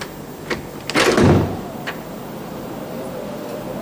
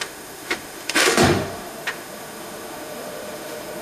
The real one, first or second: first